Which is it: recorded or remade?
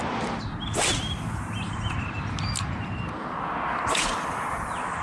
recorded